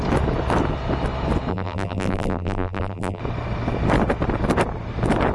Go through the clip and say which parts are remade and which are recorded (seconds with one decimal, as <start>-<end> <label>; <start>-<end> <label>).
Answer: 0.0-1.5 recorded; 1.5-3.2 remade; 3.2-5.3 recorded